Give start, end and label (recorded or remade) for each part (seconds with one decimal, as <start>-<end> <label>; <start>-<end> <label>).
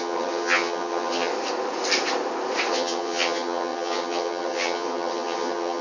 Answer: 0.0-1.3 remade; 1.3-2.7 recorded; 2.7-5.8 remade